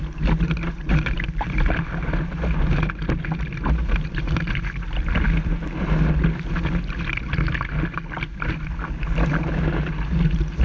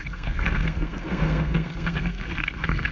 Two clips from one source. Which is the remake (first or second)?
second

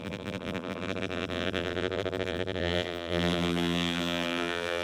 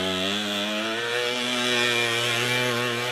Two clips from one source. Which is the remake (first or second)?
first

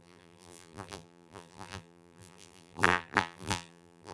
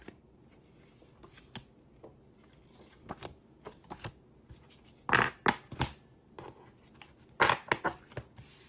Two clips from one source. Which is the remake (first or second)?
first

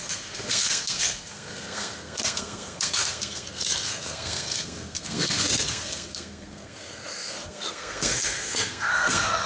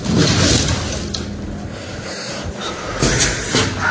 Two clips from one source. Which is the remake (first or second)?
first